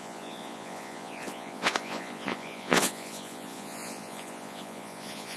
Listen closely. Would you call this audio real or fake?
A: fake